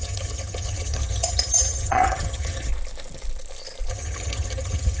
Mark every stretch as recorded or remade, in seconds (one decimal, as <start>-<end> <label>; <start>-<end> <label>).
0.0-2.7 remade; 2.7-3.9 recorded; 3.9-5.0 remade